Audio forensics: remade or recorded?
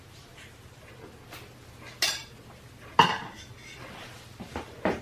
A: recorded